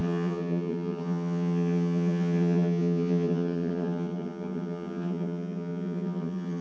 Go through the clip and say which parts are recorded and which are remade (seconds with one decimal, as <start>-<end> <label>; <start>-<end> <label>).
0.0-6.6 remade

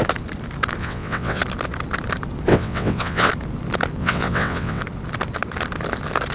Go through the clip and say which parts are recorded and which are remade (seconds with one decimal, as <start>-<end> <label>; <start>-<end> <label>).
0.0-0.8 recorded; 0.8-1.4 remade; 1.4-2.5 recorded; 2.5-3.3 remade; 3.3-4.0 recorded; 4.0-4.8 remade; 4.8-6.3 recorded

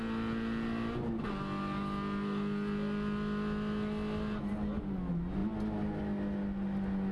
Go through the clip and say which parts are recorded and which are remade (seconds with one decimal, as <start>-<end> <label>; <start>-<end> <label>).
0.0-7.1 recorded

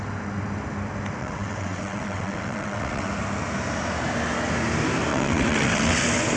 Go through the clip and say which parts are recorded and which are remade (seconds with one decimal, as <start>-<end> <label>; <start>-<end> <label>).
0.0-1.2 recorded; 1.2-3.1 remade; 3.1-5.1 recorded; 5.1-6.0 remade; 6.0-6.4 recorded

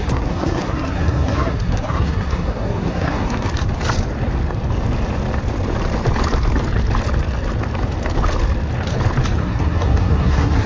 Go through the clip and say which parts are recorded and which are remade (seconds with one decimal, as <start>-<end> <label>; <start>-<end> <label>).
0.0-3.5 remade; 3.5-9.4 recorded; 9.4-10.7 remade